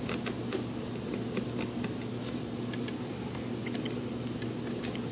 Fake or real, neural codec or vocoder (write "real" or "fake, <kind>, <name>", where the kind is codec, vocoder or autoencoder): real